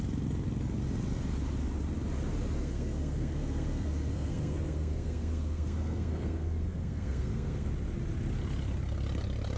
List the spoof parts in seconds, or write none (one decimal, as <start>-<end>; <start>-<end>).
2.6-7.7